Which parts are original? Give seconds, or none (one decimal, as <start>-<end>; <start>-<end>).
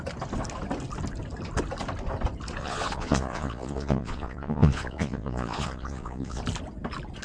0.0-2.6; 6.4-7.2